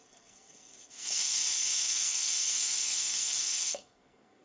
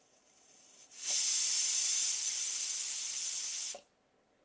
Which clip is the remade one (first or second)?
first